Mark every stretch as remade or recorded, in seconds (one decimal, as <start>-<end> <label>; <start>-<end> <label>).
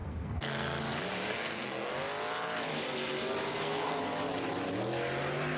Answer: 0.0-0.8 remade; 0.8-1.3 recorded; 1.3-1.9 remade; 1.9-3.5 recorded; 3.5-4.0 remade; 4.0-5.6 recorded